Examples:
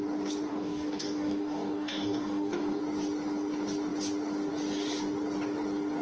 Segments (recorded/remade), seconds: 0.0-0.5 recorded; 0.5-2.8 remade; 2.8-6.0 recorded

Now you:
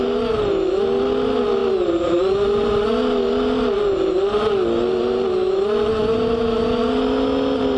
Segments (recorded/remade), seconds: 0.0-7.8 recorded

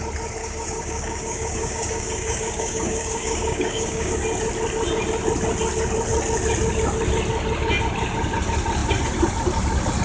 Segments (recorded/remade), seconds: 0.0-0.4 recorded; 0.4-4.1 remade; 4.1-10.0 recorded

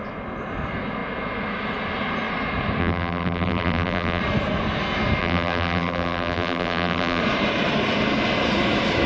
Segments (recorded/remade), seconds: 0.0-2.8 recorded; 2.8-4.2 remade; 4.2-5.2 recorded; 5.2-7.2 remade; 7.2-9.1 recorded

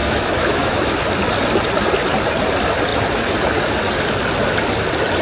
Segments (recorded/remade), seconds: 0.0-0.9 remade; 0.9-5.2 recorded

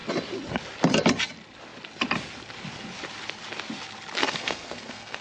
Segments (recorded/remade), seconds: 0.0-4.2 recorded; 4.2-5.2 remade

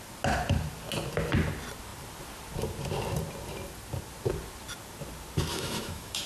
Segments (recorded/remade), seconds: 0.0-5.5 recorded; 5.5-6.3 remade

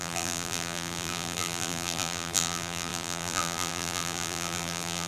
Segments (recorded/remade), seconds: 0.0-5.1 remade